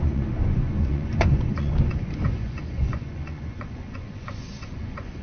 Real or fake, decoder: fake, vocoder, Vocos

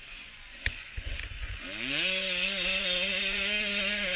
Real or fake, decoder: fake, vocoder, Vocos